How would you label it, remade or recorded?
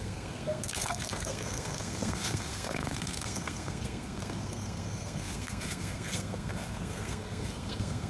remade